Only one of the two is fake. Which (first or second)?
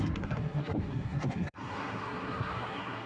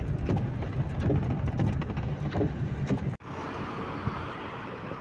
first